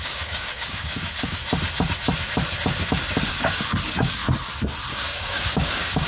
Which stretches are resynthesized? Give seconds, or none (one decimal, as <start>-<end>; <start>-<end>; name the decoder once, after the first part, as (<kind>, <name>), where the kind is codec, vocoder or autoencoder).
0.0-1.4 (codec, DAC); 3.3-4.2; 4.9-6.1